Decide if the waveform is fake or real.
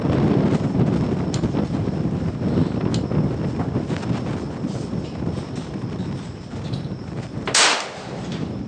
real